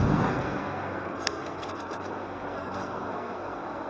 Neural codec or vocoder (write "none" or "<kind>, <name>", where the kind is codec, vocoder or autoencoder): codec, SNAC